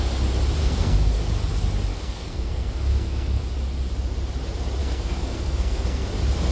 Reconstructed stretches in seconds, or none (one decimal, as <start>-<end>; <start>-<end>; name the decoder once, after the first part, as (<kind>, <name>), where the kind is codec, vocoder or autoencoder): 0.6-1.2 (codec, SNAC); 1.9-3.4; 4.8-6.1